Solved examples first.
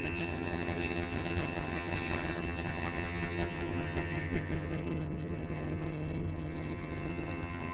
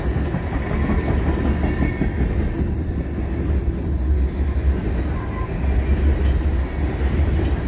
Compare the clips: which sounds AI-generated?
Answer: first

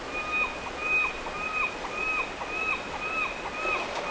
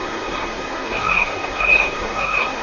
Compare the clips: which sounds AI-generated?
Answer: second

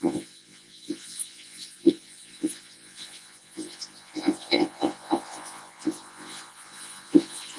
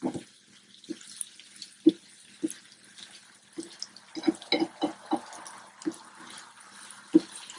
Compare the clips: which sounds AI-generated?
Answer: first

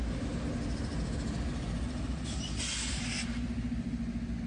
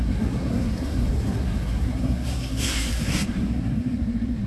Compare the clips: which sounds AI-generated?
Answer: second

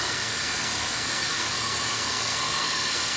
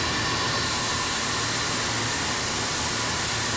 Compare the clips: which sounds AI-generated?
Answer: first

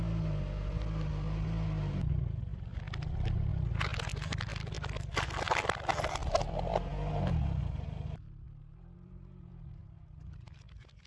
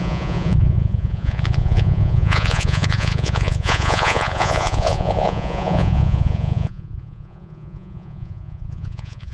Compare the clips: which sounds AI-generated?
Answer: second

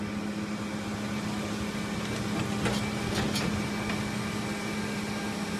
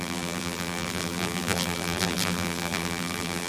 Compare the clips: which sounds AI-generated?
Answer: second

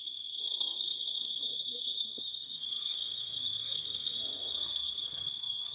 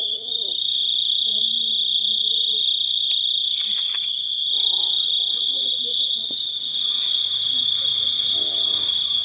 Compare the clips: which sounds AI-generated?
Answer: first